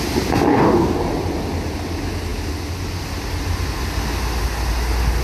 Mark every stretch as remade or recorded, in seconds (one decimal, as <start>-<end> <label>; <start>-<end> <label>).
0.0-0.5 recorded; 0.5-1.0 remade; 1.0-5.2 recorded